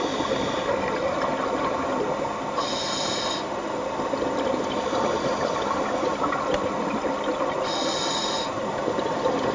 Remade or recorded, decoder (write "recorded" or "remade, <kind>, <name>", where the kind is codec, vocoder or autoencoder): recorded